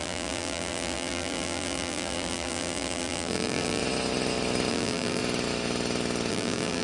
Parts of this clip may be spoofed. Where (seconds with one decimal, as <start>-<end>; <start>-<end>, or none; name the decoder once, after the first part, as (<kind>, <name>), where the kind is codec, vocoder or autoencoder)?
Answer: 0.0-3.8 (vocoder, BigVGAN v2); 4.7-5.2; 6.3-6.8